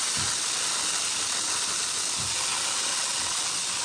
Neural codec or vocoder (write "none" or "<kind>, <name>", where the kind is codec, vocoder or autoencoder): none